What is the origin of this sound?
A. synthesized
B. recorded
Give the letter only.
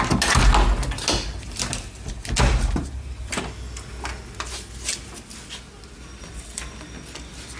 B